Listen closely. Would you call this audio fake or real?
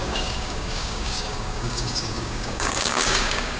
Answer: fake